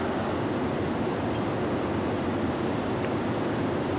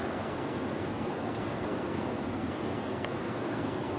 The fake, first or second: second